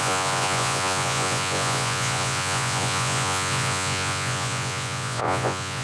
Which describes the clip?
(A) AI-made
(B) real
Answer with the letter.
A